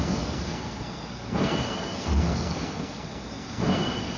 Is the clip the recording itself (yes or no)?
no